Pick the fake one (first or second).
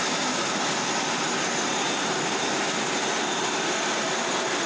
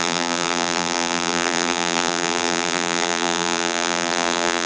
second